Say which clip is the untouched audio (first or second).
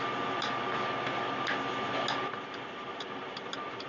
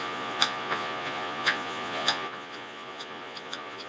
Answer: first